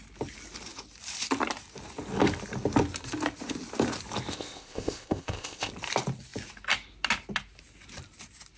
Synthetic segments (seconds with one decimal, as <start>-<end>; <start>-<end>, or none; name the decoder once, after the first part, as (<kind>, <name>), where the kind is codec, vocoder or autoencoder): 4.3-5.7 (codec, ZipCodec)